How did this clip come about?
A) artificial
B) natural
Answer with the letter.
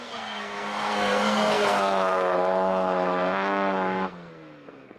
A